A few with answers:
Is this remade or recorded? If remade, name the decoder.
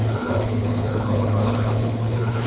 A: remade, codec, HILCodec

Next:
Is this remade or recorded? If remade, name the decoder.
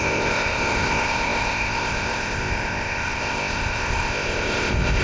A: remade, codec, ZipCodec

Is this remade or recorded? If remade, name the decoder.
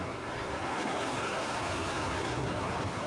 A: remade, codec, SNAC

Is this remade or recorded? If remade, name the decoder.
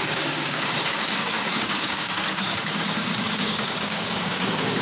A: remade, codec, DAC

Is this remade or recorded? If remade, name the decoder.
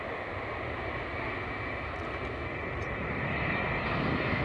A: recorded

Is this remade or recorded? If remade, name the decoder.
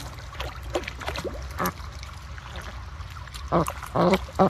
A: recorded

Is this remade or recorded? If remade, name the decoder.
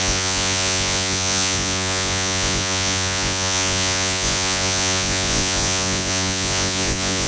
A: remade, vocoder, Vocos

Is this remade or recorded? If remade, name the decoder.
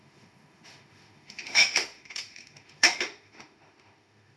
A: remade, autoencoder, DAC-VAE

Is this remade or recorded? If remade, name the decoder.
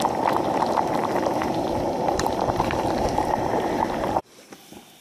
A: remade, vocoder, BigVGAN v2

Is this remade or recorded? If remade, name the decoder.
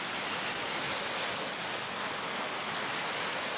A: recorded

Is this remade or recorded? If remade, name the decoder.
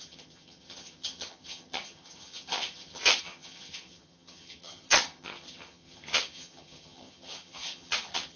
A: remade, vocoder, HiFi-GAN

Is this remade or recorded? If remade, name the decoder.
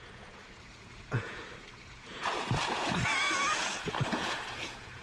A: remade, vocoder, Vocos